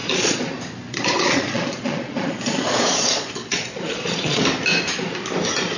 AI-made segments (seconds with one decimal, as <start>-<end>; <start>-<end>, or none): 0.0-0.5; 0.9-4.4

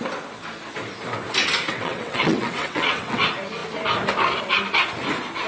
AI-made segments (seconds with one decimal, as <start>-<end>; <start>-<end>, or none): 1.7-3.2

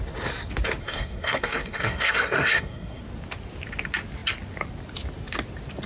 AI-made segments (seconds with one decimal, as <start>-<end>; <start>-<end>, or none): 0.8-3.0

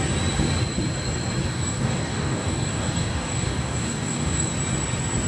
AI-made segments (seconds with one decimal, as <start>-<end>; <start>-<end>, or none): 1.4-4.5

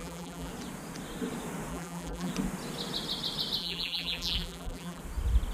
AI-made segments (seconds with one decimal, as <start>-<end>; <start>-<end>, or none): 0.0-0.5; 1.7-2.3; 3.6-5.0

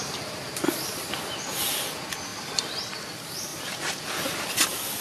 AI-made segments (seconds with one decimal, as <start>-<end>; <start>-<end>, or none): 2.3-2.9; 3.5-4.5

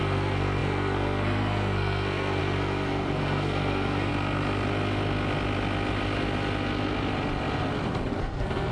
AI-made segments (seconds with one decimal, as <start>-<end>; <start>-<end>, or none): 0.0-4.1; 8.2-8.7